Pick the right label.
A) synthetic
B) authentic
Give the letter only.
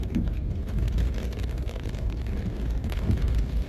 A